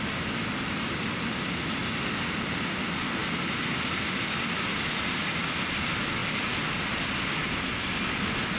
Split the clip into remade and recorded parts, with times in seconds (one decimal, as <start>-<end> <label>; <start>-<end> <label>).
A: 0.0-8.6 recorded